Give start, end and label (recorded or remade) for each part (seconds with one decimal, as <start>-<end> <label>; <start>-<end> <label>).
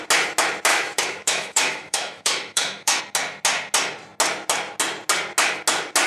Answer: 0.0-0.7 recorded; 0.7-3.0 remade; 3.0-6.1 recorded